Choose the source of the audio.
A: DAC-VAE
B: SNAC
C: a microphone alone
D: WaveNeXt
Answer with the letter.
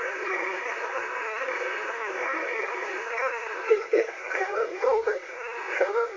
B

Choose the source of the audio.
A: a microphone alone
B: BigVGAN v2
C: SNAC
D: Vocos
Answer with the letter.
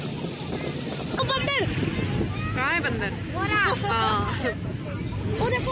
A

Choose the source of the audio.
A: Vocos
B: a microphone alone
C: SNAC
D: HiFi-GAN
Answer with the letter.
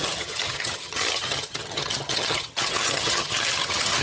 D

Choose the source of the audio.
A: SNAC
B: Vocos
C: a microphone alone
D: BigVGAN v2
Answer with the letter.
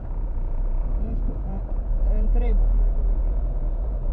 B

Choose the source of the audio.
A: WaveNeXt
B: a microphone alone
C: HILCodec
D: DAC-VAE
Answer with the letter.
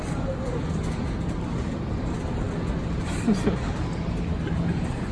B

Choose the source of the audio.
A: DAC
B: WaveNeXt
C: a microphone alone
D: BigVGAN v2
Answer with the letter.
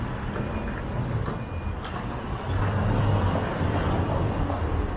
C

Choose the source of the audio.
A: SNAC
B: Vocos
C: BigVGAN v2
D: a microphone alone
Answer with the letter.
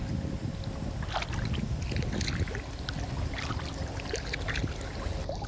D